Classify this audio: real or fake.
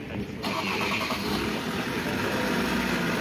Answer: real